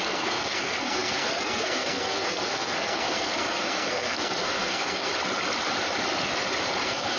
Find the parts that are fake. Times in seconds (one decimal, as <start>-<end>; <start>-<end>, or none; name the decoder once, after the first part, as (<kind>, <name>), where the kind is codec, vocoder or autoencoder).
0.0-5.1 (codec, SNAC); 6.8-7.2